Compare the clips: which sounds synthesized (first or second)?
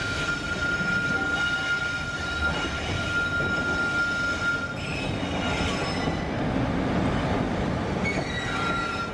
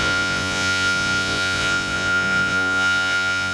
second